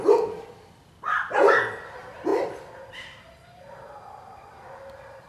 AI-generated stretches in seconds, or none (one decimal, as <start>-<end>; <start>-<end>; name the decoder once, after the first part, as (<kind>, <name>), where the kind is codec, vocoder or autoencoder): none